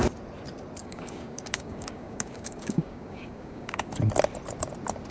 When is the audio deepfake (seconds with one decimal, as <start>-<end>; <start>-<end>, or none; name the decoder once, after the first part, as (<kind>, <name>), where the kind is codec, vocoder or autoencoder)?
0.8-3.9 (codec, DAC)